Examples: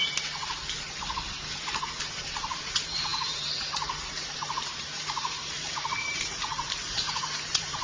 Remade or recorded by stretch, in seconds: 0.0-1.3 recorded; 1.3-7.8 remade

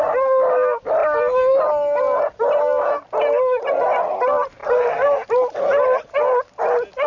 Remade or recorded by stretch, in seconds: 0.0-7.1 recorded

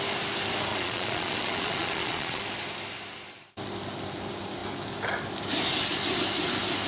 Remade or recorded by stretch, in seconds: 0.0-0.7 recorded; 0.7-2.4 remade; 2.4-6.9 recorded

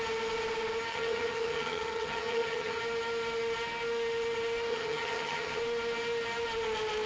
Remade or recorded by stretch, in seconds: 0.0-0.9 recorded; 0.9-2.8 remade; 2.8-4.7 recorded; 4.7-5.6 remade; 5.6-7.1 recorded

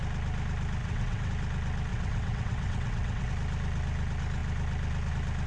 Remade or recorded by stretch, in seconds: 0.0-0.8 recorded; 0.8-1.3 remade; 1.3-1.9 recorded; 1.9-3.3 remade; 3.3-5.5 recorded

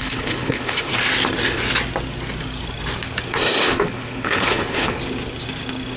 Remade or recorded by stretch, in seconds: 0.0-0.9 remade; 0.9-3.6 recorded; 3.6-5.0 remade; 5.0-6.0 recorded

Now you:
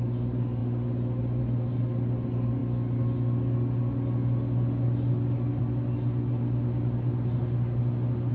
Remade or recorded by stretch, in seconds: 0.0-8.3 recorded